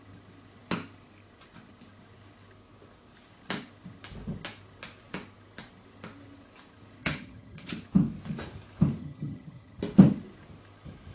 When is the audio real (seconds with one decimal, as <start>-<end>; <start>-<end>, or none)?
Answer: 0.0-7.0; 7.7-9.0; 9.8-11.1